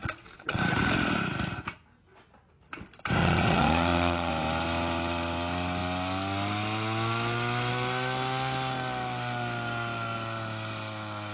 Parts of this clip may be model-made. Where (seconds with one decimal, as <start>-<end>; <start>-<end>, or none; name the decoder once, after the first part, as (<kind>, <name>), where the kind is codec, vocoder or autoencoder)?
0.0-0.6 (vocoder, Vocos); 3.2-4.3